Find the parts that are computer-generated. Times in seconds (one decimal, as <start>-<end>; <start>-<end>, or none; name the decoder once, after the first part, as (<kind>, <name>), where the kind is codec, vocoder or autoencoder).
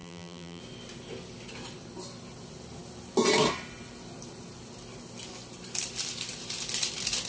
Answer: 0.0-0.6 (vocoder, BigVGAN v2)